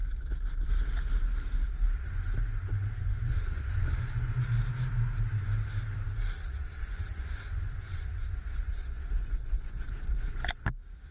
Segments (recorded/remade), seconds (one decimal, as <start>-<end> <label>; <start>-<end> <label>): 0.0-3.0 recorded; 3.0-4.3 remade; 4.3-6.5 recorded; 6.5-10.7 remade; 10.7-11.1 recorded

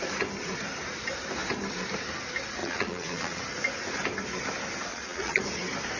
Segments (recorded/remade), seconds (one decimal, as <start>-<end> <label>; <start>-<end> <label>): 0.0-2.6 recorded; 2.6-3.4 remade; 3.4-4.9 recorded; 4.9-5.4 remade; 5.4-6.0 recorded

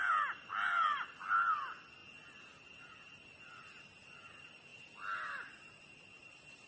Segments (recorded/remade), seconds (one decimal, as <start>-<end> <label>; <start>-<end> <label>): 0.0-6.7 recorded

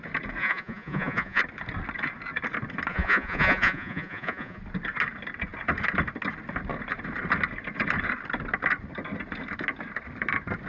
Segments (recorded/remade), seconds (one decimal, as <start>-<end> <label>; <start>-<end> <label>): 0.0-0.4 recorded; 0.4-1.4 remade; 1.4-2.9 recorded; 2.9-4.6 remade; 4.6-10.7 recorded